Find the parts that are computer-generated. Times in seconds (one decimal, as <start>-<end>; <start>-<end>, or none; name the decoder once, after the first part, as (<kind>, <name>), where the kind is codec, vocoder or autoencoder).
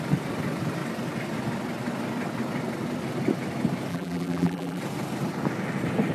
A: 3.9-4.8 (vocoder, BigVGAN v2)